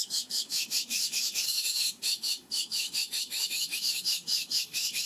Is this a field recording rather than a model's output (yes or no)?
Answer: no